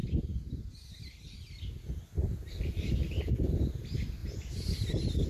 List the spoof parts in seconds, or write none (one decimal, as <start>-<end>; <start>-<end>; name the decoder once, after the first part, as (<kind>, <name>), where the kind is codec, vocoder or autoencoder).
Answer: 4.2-4.8 (vocoder, BigVGAN v2)